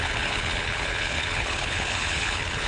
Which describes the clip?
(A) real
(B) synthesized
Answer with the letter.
B